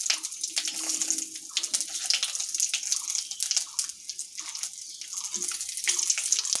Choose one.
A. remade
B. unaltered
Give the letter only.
B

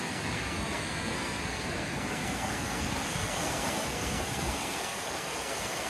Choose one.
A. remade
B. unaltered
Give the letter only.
A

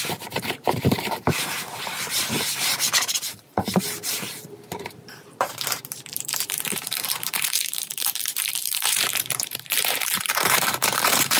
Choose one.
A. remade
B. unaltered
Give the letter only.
A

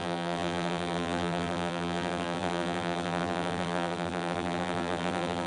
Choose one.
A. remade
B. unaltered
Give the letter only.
A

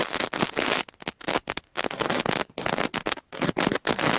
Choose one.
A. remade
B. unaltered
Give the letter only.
B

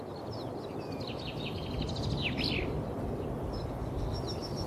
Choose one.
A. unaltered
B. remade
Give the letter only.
A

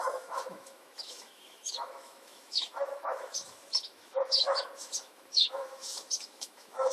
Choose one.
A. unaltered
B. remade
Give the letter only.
B